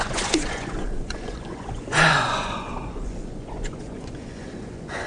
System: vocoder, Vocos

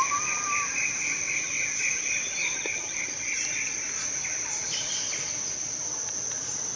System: none